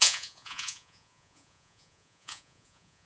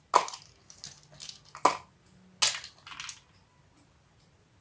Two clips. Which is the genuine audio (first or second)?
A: second